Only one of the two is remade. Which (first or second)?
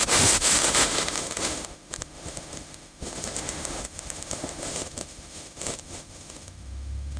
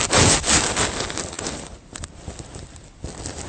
first